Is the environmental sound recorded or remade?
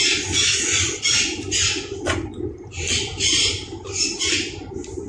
recorded